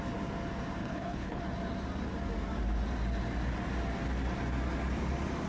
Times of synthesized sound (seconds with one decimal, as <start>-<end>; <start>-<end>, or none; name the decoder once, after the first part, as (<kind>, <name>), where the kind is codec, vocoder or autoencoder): 0.8-1.4 (codec, HILCodec)